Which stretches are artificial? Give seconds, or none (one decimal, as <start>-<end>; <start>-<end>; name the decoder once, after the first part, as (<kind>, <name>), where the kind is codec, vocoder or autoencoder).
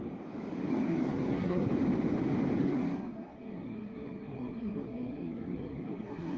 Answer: 0.7-1.7 (codec, SNAC); 2.6-6.4